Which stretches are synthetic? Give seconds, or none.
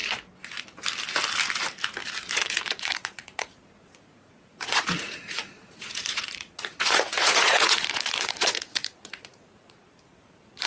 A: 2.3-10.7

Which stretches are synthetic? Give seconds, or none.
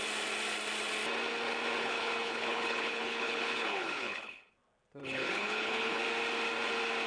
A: 1.8-4.5; 5.0-6.0